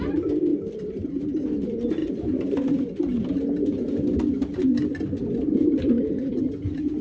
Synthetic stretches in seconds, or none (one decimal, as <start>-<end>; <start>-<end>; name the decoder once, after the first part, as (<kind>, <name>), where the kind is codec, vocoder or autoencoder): 0.5-1.1 (vocoder, BigVGAN v2); 2.0-3.2